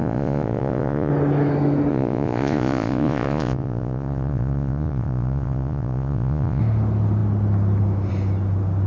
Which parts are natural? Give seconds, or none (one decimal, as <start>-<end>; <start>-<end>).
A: 1.1-1.9; 6.6-8.9